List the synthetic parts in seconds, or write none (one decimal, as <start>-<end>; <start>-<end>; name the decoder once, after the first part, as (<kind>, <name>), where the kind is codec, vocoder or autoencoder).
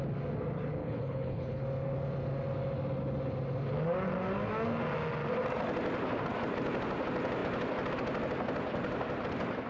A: 0.8-1.6 (codec, HILCodec)